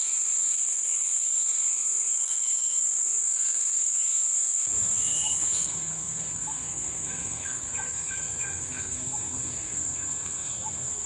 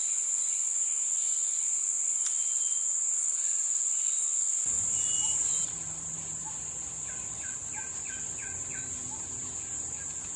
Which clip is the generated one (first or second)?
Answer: first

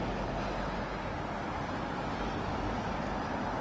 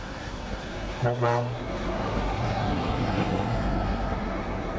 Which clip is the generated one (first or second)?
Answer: second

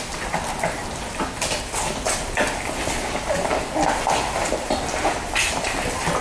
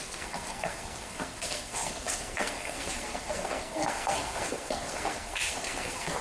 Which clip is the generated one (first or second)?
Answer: second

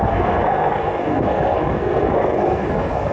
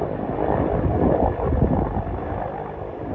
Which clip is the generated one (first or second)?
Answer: first